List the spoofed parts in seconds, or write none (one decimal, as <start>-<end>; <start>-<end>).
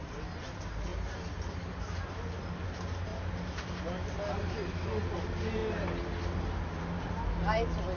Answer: none